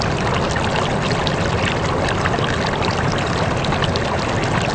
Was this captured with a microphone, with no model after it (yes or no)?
yes